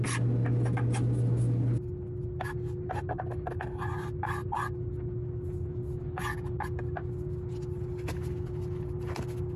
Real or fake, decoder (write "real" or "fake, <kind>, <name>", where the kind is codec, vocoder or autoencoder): real